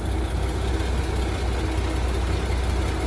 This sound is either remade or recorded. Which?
recorded